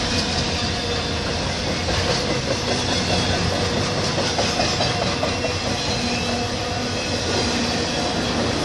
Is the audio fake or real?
real